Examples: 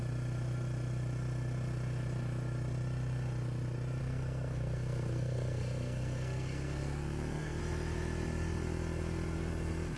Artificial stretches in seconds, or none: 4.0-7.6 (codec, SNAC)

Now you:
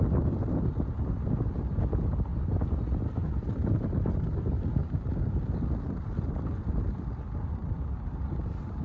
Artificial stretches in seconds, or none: none

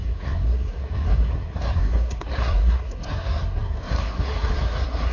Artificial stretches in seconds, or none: 0.0-5.1 (codec, SNAC)

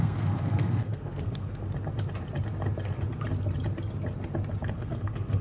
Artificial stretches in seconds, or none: 0.0-1.6 (codec, SNAC); 4.7-5.4

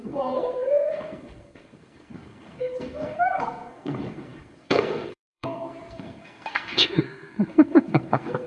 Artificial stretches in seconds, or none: 0.0-8.5 (codec, SNAC)

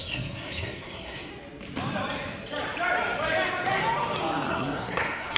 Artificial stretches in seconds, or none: 0.0-1.3 (codec, SNAC); 4.5-5.4